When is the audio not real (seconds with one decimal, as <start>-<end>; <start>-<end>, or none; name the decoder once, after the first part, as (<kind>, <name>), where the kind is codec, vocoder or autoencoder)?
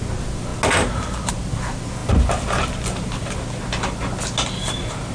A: none